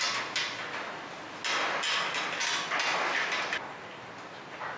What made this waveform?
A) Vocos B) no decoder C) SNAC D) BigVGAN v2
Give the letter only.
B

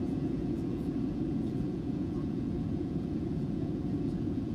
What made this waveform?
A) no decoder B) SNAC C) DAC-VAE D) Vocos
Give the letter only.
D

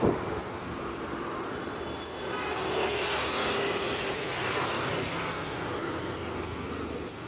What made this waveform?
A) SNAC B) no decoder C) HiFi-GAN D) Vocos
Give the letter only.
B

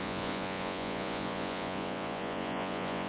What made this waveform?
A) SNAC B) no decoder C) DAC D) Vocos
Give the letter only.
D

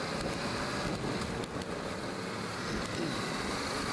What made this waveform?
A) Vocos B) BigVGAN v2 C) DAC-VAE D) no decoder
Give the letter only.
D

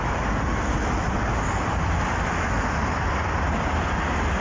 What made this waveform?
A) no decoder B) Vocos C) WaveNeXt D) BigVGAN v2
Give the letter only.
A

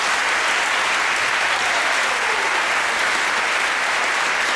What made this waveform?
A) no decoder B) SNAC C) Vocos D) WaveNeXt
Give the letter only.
A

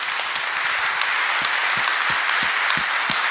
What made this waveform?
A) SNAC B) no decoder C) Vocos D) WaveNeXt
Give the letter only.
B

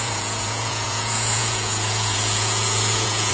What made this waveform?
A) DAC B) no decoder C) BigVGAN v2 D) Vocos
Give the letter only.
D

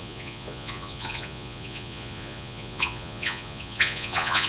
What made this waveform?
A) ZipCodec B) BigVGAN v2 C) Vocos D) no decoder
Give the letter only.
C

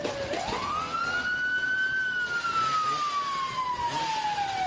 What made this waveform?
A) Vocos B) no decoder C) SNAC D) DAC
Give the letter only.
B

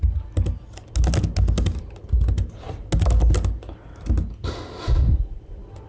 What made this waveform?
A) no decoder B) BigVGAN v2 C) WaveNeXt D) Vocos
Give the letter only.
A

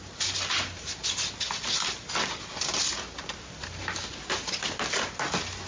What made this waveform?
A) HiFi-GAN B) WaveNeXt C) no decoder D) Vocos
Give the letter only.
C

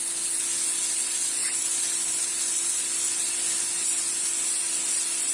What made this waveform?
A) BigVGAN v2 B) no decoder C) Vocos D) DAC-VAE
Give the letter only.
B